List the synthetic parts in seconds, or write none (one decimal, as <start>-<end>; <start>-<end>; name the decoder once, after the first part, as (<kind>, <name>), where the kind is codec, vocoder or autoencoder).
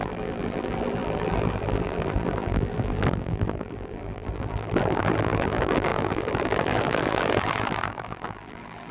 0.0-8.9 (vocoder, BigVGAN v2)